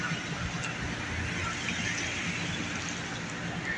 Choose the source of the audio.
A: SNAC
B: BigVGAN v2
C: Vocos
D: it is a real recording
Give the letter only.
D